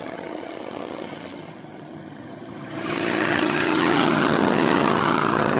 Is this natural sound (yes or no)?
no